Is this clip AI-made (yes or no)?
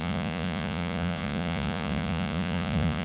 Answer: yes